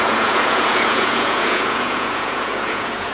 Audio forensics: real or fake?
fake